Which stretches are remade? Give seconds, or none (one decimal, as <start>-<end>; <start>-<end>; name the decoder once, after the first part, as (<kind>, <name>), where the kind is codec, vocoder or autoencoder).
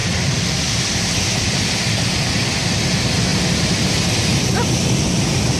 0.0-0.8 (vocoder, BigVGAN v2); 3.3-4.4